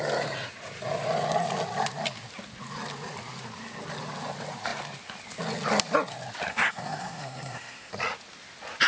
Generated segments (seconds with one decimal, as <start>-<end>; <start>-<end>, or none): 6.5-7.9